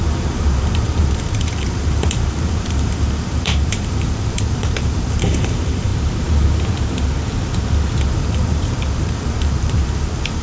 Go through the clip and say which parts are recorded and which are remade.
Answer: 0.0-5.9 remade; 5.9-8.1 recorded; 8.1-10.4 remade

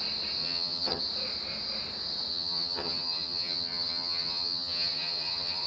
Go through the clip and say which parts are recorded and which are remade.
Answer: 0.0-0.4 recorded; 0.4-1.0 remade; 1.0-2.3 recorded; 2.3-5.7 remade

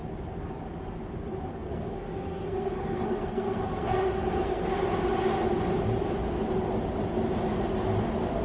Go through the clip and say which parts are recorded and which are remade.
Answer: 0.0-1.5 recorded; 1.5-4.8 remade; 4.8-8.4 recorded

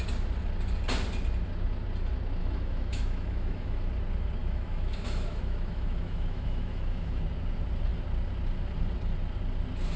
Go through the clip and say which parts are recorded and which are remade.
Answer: 0.0-2.4 recorded; 2.4-3.9 remade; 3.9-4.4 recorded; 4.4-7.2 remade; 7.2-10.0 recorded